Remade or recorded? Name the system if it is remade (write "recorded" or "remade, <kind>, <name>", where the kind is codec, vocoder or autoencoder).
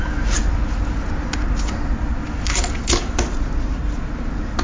recorded